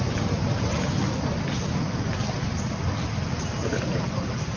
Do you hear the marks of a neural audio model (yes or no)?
no